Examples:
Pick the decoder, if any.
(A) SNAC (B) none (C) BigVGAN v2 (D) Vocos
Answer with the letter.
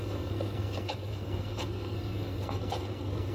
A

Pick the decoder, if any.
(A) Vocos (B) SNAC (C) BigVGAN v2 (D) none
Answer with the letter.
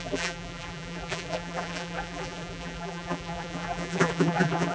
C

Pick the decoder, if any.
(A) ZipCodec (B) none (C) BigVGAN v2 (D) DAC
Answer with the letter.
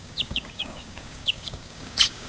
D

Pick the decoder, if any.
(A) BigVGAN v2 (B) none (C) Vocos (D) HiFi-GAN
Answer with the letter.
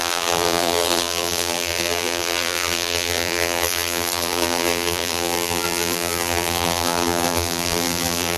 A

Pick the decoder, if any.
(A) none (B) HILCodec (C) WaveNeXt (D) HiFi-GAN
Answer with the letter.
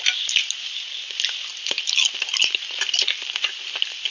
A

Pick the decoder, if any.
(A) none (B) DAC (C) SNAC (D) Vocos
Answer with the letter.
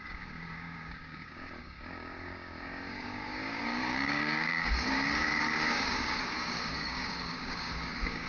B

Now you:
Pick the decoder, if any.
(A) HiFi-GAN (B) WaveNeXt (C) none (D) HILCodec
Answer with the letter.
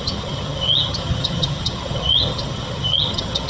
A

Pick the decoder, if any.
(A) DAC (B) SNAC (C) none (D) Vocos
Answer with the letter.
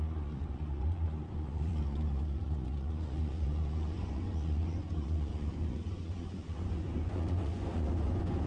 D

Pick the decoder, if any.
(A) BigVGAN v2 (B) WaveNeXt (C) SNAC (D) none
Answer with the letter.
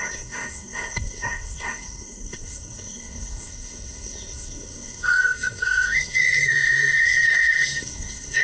C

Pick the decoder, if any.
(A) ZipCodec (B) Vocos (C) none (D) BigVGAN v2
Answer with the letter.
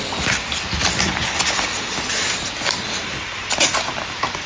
C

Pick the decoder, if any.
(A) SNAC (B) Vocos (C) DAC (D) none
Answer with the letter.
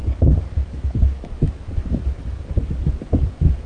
C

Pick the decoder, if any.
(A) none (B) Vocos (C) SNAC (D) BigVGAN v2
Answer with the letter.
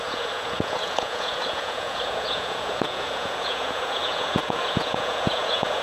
B